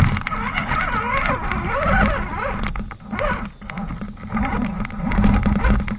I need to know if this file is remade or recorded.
recorded